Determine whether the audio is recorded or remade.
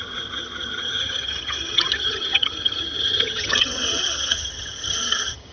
remade